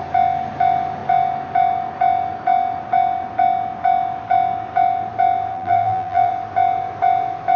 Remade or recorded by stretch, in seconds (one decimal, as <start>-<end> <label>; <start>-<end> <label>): 0.0-5.5 recorded; 5.5-6.3 remade; 6.3-7.6 recorded